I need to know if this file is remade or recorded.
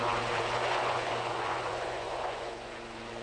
remade